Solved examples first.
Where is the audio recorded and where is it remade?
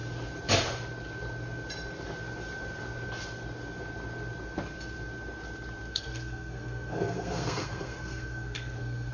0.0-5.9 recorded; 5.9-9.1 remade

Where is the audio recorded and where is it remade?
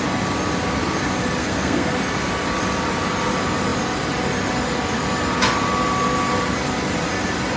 0.0-1.4 recorded; 1.4-1.9 remade; 1.9-7.6 recorded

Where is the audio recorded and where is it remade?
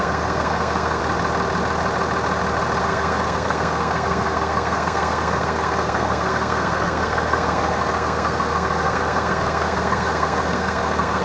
0.0-1.0 remade; 1.0-2.8 recorded; 2.8-11.2 remade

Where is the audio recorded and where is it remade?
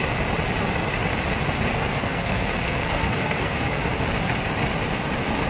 0.0-1.7 recorded; 1.7-3.8 remade; 3.8-5.5 recorded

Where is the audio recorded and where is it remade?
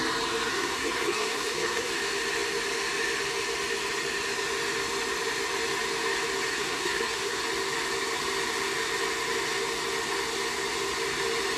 0.0-0.5 recorded; 0.5-1.9 remade; 1.9-6.5 recorded; 6.5-7.4 remade; 7.4-11.6 recorded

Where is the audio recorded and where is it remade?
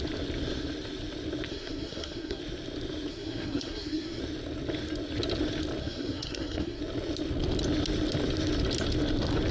0.0-1.5 recorded; 1.5-2.4 remade; 2.4-3.1 recorded; 3.1-4.2 remade; 4.2-5.8 recorded; 5.8-6.8 remade; 6.8-9.5 recorded